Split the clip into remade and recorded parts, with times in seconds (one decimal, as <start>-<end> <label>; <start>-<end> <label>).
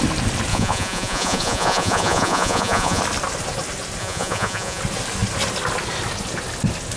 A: 0.0-0.5 recorded; 0.5-3.0 remade; 3.0-4.0 recorded; 4.0-4.8 remade; 4.8-7.0 recorded